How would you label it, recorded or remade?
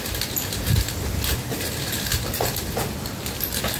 recorded